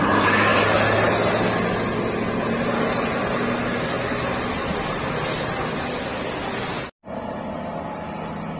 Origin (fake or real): real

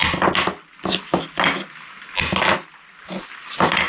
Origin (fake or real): real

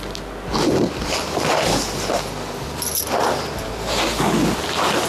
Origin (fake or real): real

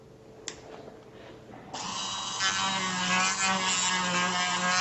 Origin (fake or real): real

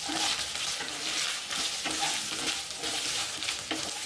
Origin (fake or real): real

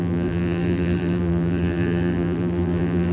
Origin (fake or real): fake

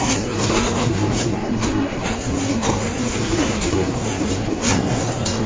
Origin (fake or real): fake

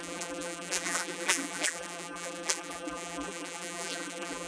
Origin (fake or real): fake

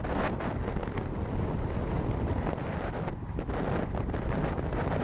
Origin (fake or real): real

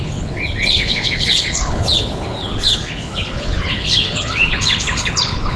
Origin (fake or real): fake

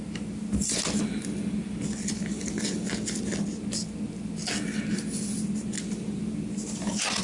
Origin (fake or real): real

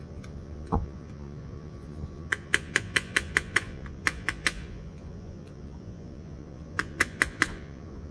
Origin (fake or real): fake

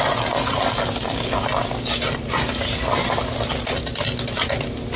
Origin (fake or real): real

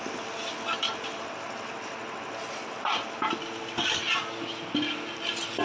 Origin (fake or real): real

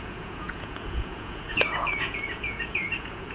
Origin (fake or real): fake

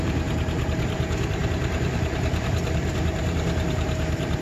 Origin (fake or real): fake